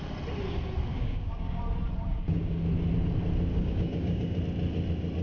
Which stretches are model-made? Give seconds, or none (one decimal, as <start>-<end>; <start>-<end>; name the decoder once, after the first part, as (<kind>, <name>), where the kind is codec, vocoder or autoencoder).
0.9-1.6 (codec, DAC); 2.1-2.6; 3.5-4.4